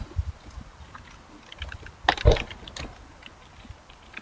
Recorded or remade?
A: recorded